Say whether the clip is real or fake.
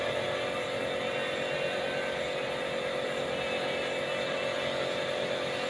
real